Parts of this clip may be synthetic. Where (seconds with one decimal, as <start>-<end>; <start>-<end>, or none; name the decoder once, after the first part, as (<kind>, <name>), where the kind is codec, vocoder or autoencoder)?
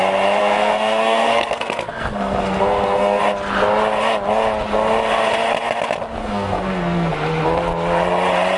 0.4-3.2 (codec, SNAC); 6.2-7.1